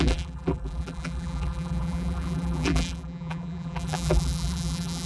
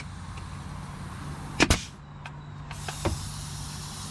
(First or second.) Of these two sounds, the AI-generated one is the first